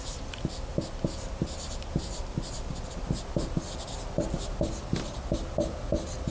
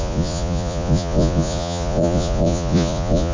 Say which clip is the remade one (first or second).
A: second